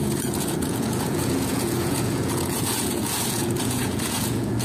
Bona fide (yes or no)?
no